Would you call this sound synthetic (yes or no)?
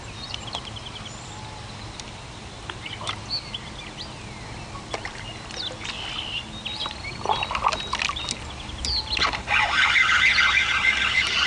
no